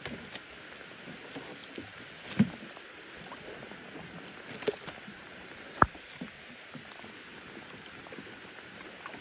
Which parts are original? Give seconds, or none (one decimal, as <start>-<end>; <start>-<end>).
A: 0.0-1.6; 6.5-9.2